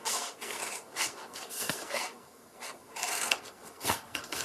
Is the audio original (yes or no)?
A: no